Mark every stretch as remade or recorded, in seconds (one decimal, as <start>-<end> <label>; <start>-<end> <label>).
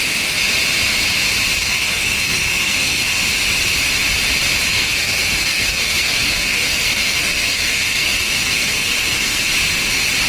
0.0-1.6 recorded; 1.6-3.2 remade; 3.2-4.7 recorded; 4.7-9.5 remade; 9.5-10.3 recorded